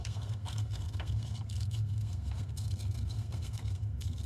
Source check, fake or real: fake